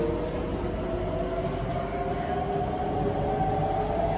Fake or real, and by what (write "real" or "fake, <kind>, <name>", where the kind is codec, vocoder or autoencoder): real